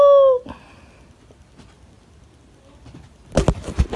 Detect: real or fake real